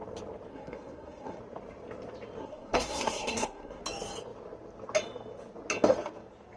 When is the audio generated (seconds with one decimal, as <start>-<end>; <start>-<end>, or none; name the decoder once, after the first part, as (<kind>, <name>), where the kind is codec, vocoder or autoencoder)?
0.5-1.4 (codec, SNAC); 2.4-3.8